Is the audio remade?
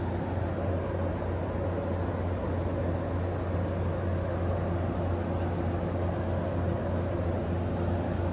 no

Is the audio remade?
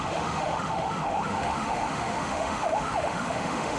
yes